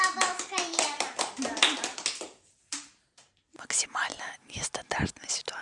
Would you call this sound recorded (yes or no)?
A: yes